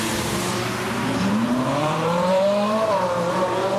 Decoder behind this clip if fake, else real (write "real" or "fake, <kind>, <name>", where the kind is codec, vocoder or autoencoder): fake, vocoder, BigVGAN v2